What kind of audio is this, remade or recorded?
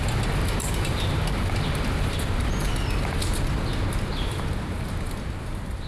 recorded